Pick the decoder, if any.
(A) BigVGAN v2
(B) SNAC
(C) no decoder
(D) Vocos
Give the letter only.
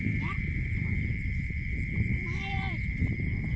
A